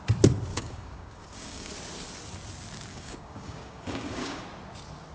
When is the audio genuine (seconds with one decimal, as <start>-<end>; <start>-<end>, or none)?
0.0-0.5; 1.7-2.9; 4.4-5.1